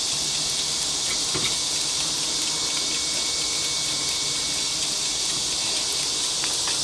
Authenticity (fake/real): real